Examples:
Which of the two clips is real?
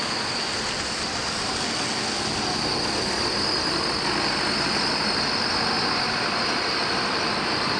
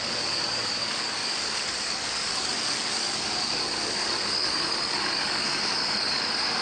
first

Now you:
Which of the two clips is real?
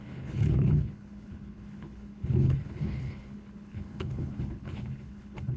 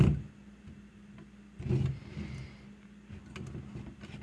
second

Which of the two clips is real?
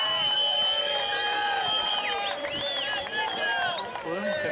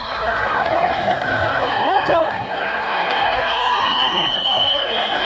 first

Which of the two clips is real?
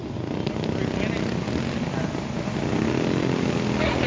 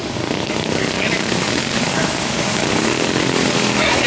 first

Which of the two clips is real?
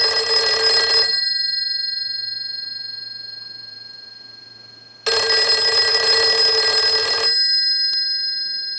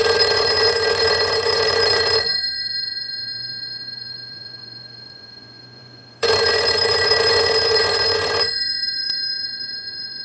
first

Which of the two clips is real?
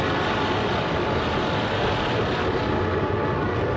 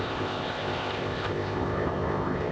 first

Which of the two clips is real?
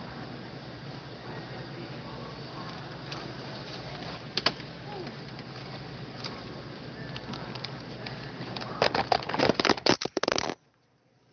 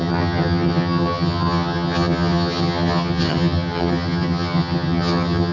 first